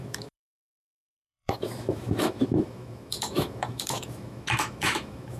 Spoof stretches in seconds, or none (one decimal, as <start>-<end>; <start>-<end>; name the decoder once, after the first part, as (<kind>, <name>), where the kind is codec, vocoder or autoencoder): 0.0-5.4 (autoencoder, DAC-VAE)